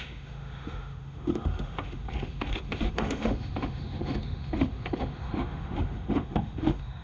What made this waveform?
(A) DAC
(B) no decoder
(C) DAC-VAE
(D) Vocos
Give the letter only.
C